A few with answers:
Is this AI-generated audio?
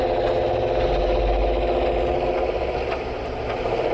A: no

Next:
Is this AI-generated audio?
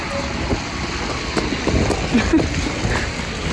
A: no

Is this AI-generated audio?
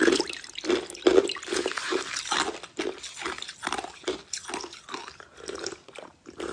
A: no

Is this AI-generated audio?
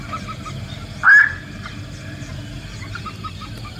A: no